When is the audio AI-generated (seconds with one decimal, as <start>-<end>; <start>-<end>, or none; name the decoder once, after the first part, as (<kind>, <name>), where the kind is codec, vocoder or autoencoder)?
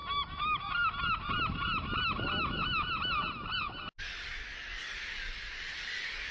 none